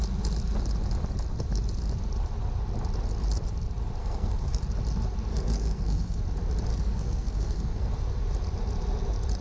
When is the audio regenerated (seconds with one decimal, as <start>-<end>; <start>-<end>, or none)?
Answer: 4.0-4.6; 5.3-6.2; 6.7-7.9